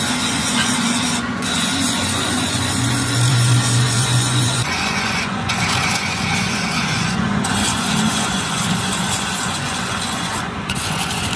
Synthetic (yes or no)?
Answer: yes